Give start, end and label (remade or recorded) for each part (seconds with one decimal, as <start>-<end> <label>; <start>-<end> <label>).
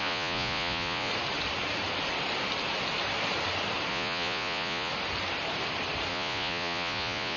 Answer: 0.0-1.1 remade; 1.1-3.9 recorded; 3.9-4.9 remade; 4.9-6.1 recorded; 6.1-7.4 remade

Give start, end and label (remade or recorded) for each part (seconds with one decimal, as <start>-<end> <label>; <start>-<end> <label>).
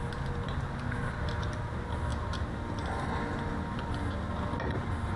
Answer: 0.0-5.2 recorded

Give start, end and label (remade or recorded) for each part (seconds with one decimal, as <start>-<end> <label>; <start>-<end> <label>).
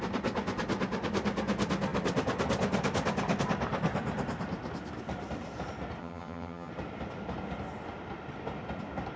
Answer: 0.0-6.0 recorded; 6.0-6.7 remade; 6.7-9.2 recorded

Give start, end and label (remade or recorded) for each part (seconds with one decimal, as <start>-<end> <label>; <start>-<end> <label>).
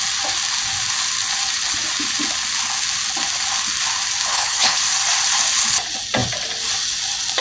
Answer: 0.0-4.3 recorded; 4.3-4.8 remade; 4.8-7.4 recorded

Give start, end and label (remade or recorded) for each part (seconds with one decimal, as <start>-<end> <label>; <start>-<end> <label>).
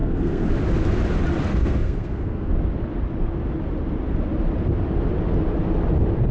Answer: 0.0-0.5 remade; 0.5-1.5 recorded; 1.5-2.5 remade; 2.5-6.3 recorded